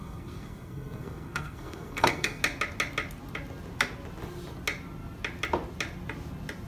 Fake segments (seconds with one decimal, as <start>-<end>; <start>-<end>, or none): 0.0-2.4